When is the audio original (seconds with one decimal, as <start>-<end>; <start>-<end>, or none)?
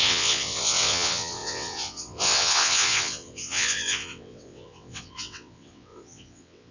none